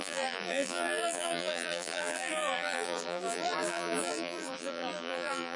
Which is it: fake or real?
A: fake